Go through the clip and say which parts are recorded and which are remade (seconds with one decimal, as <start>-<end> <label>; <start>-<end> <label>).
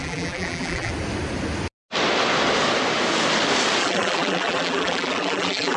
0.0-0.9 remade; 0.9-3.8 recorded; 3.8-5.8 remade